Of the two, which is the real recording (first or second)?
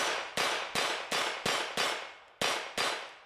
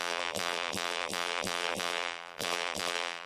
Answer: first